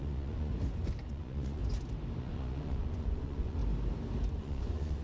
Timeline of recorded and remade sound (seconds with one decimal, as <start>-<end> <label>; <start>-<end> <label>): 0.0-0.5 remade; 0.5-1.1 recorded; 1.1-1.6 remade; 1.6-2.2 recorded; 2.2-3.6 remade; 3.6-4.3 recorded; 4.3-5.0 remade